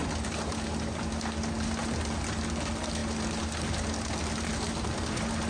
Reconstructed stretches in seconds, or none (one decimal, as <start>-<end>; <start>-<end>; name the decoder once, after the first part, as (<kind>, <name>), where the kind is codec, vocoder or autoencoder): none